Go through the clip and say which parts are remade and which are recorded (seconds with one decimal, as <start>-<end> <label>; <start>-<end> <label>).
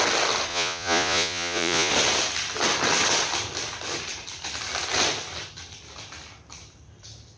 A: 0.0-0.5 recorded; 0.5-1.9 remade; 1.9-7.4 recorded